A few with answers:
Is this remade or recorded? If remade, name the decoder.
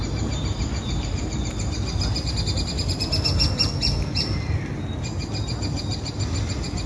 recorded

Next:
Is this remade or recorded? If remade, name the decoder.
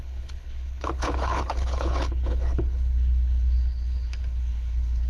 remade, codec, HILCodec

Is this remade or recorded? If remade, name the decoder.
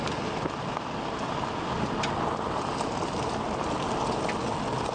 recorded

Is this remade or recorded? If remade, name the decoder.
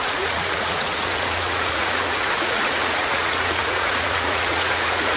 remade, vocoder, Vocos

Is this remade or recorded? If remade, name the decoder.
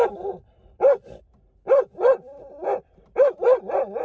recorded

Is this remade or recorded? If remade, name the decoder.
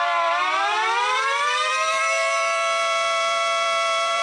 remade, vocoder, BigVGAN v2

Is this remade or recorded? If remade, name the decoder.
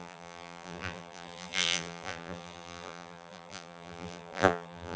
remade, vocoder, BigVGAN v2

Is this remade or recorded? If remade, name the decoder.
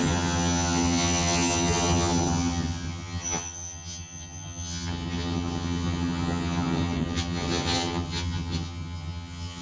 remade, vocoder, HiFi-GAN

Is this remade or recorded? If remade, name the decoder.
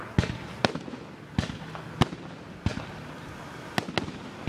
recorded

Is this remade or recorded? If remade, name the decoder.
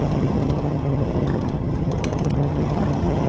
remade, vocoder, HiFi-GAN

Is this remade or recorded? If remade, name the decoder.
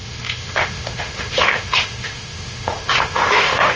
remade, autoencoder, DAC-VAE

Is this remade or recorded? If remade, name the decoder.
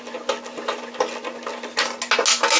recorded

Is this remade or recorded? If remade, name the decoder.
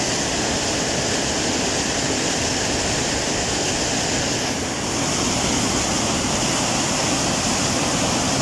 recorded